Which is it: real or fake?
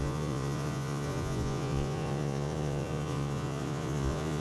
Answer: fake